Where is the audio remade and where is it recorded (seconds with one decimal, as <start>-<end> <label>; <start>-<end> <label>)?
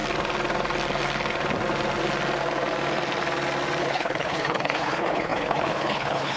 0.0-3.8 recorded; 3.8-6.4 remade